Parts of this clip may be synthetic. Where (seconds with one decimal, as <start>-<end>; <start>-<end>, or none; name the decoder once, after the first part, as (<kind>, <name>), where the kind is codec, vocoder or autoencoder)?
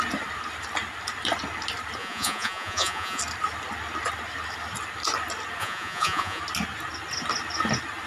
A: 2.0-3.2 (vocoder, Vocos); 5.6-6.4